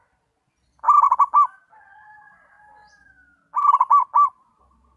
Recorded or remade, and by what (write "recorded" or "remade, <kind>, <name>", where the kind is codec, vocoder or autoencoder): recorded